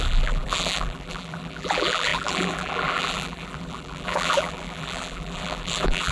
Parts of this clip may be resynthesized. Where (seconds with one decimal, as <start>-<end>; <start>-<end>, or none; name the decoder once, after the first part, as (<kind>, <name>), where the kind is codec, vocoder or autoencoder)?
0.0-6.1 (vocoder, BigVGAN v2)